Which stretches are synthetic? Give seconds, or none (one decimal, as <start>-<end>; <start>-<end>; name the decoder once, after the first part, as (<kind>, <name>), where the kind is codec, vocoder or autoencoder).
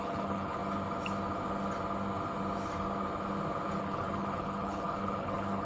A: 0.0-0.6 (codec, HILCodec); 3.8-5.7